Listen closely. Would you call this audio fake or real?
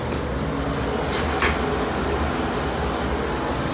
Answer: real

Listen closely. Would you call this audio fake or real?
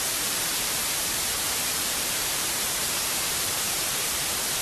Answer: fake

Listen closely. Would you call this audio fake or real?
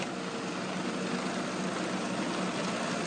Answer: real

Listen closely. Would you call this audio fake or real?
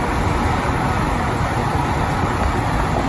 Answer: real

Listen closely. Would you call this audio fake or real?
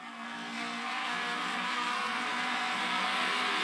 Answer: fake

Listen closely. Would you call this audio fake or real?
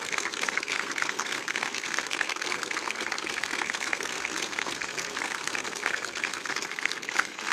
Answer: fake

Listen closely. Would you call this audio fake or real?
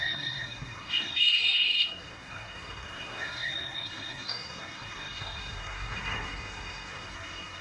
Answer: fake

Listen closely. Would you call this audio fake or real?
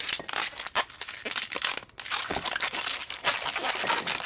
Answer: real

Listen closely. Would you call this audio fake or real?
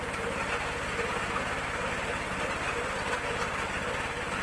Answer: real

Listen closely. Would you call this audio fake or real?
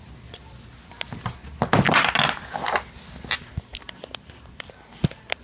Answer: real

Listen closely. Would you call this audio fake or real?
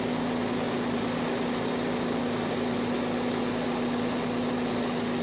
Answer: real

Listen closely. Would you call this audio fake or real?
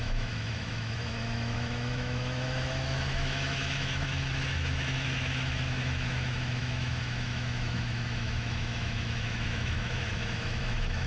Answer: fake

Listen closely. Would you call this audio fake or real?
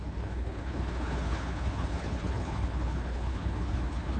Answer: fake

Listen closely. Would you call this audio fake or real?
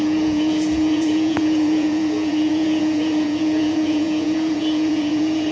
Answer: fake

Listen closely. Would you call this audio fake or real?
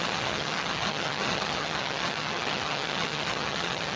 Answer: fake